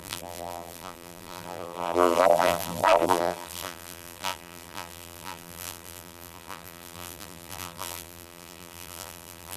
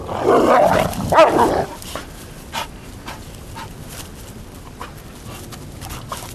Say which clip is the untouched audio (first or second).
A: second